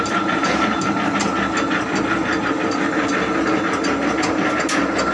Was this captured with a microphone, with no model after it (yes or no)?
yes